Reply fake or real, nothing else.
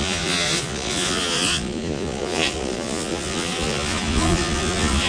fake